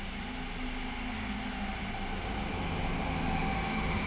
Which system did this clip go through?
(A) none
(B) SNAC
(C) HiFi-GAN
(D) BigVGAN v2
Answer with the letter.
A